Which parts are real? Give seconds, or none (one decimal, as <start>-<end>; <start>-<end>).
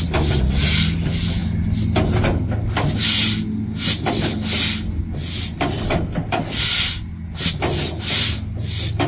0.0-9.1